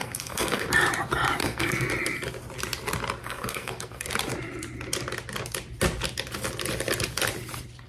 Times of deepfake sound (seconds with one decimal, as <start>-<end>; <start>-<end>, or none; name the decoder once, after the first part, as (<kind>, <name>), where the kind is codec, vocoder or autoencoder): 0.0-0.7 (codec, SNAC); 1.4-1.9; 3.2-4.1